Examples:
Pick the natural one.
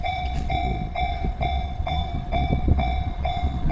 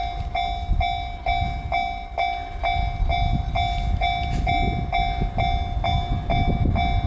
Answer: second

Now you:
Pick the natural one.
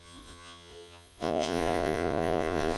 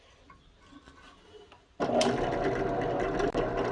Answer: second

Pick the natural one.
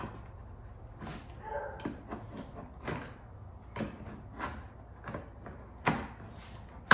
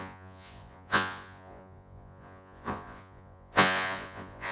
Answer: first